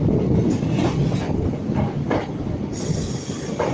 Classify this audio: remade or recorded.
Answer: recorded